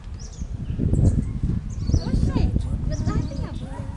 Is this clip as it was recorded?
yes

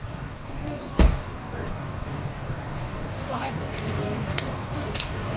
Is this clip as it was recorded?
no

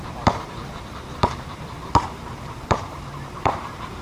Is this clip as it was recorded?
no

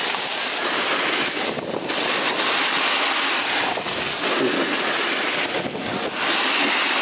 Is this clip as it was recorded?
yes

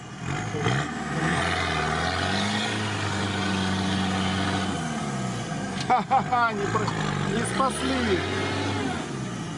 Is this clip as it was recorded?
yes